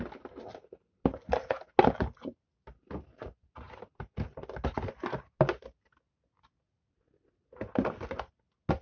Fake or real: real